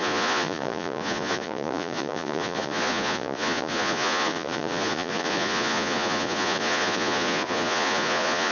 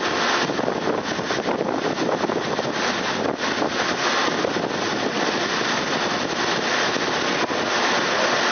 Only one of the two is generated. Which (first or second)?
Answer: first